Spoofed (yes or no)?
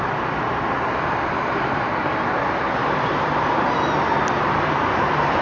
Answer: yes